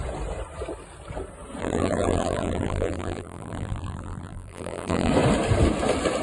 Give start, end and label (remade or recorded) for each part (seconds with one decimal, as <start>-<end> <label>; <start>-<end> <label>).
0.0-1.6 recorded; 1.6-5.1 remade; 5.1-6.2 recorded